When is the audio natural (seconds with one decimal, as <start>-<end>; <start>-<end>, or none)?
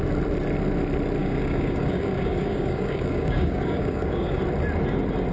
0.0-1.2; 4.4-5.3